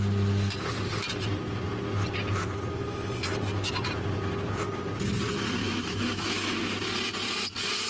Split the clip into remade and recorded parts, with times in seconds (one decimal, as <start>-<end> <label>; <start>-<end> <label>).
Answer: 0.0-5.6 recorded; 5.6-6.8 remade; 6.8-7.9 recorded